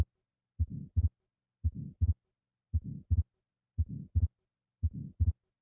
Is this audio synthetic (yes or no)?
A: no